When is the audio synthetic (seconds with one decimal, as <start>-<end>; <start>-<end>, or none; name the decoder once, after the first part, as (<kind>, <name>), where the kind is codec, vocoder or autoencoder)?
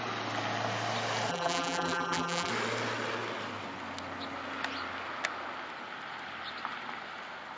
1.3-2.5 (vocoder, BigVGAN v2)